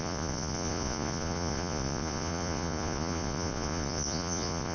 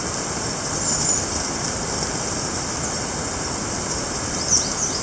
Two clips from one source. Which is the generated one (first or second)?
first